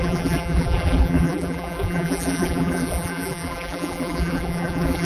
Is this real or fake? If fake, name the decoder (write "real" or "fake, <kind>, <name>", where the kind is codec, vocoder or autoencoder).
fake, vocoder, BigVGAN v2